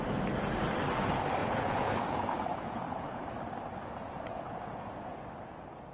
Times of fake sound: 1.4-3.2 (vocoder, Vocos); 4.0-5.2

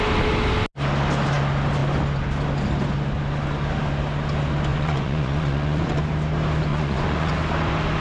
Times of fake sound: 4.7-6.0 (vocoder, Vocos); 6.7-7.3

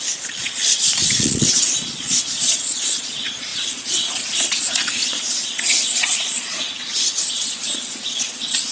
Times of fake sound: 0.0-8.7 (vocoder, Vocos)

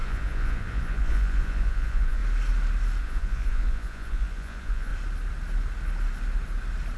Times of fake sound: 0.0-2.2 (vocoder, Vocos); 3.0-4.9

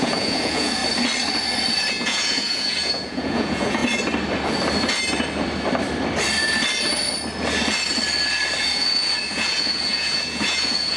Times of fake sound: 0.0-0.8 (vocoder, Vocos); 1.9-3.8; 8.6-11.0

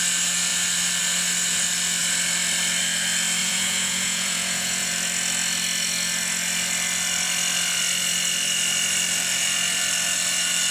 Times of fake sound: 3.4-4.9 (vocoder, Vocos)

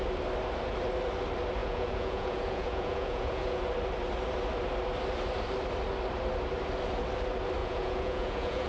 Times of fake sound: 1.6-3.7 (vocoder, Vocos); 7.6-8.7

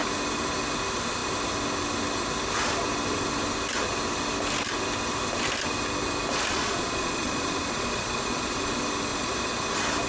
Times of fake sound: 6.5-8.7 (vocoder, Vocos); 9.1-9.6